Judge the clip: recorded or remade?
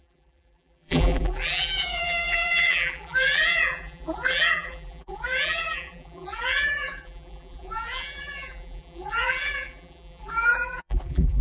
remade